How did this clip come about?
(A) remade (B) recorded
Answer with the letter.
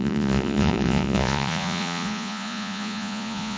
A